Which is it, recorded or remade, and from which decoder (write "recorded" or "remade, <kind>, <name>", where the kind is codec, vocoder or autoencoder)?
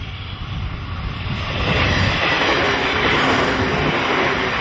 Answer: recorded